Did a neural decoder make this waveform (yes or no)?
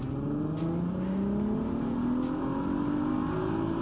no